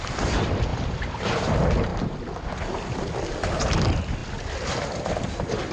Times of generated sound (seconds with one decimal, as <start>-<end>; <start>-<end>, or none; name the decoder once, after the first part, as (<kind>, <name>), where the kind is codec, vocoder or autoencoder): 0.7-1.3 (vocoder, BigVGAN v2)